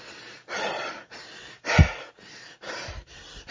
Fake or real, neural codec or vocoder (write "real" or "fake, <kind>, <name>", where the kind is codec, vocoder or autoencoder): real